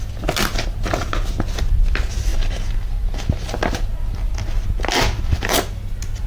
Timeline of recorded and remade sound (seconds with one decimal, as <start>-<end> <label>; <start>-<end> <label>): 0.0-6.3 recorded